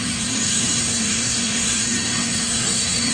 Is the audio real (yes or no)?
no